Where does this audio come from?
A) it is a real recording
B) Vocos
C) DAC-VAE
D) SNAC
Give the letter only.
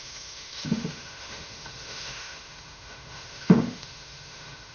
C